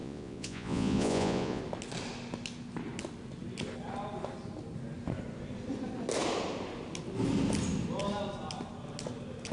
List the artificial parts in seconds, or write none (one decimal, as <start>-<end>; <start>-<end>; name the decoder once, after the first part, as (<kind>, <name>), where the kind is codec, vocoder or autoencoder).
0.0-1.6 (vocoder, Vocos)